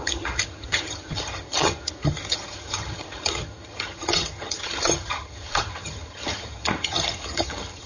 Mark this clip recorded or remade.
remade